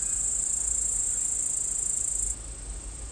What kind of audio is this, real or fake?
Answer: real